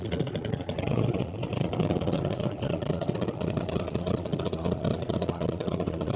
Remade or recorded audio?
remade